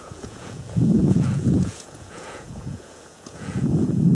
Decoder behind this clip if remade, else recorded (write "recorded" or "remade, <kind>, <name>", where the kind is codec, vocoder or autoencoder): remade, vocoder, Vocos